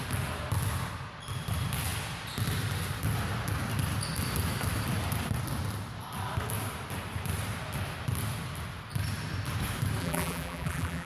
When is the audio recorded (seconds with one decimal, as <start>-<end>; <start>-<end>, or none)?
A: 0.0-10.0